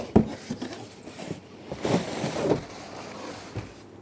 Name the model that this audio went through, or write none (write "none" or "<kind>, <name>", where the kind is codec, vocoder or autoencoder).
none